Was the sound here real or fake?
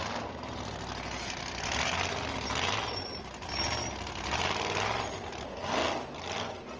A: real